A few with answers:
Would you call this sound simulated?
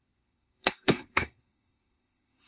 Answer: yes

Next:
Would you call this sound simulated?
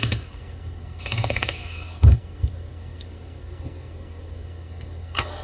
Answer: yes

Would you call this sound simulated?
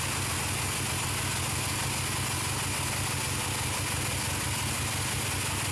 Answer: no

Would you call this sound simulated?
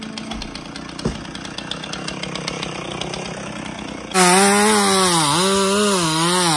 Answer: no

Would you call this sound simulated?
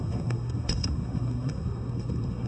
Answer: yes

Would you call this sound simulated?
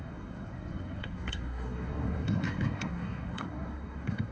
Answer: yes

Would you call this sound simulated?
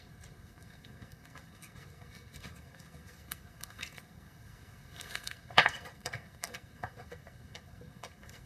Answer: yes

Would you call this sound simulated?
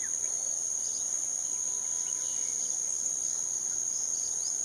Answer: no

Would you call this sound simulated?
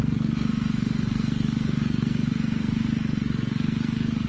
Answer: yes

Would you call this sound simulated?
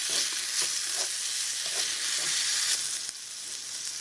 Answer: no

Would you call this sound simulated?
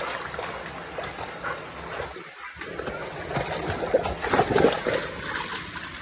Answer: no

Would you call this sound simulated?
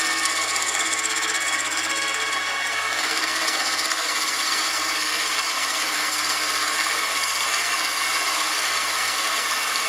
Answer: yes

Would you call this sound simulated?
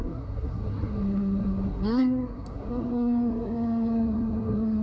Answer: yes